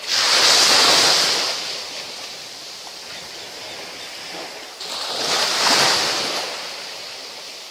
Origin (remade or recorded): recorded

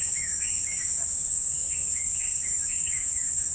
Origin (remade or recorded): remade